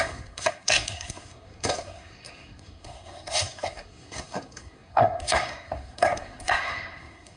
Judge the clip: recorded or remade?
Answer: remade